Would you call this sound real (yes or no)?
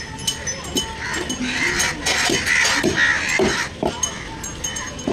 yes